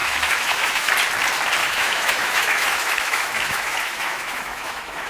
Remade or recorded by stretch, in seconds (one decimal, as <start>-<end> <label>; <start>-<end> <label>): 0.0-0.9 remade; 0.9-1.6 recorded; 1.6-5.1 remade